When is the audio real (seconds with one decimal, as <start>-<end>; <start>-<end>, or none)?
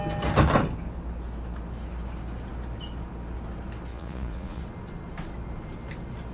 0.0-3.9; 4.6-6.3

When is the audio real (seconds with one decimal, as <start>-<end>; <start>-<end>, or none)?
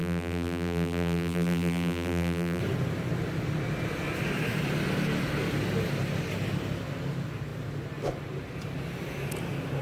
2.6-9.8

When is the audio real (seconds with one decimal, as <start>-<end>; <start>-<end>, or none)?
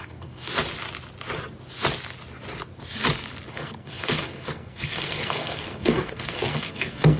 0.5-3.5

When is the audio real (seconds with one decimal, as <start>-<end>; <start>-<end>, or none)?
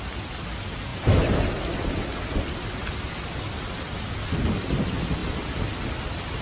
0.0-6.4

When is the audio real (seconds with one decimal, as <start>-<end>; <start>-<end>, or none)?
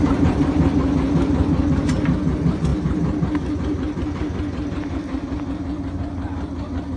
0.6-7.0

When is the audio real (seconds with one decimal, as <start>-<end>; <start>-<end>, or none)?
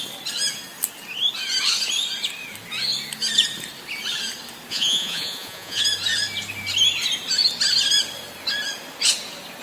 0.0-4.7; 5.8-9.6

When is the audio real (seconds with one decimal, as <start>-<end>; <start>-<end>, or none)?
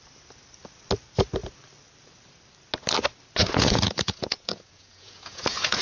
0.0-3.4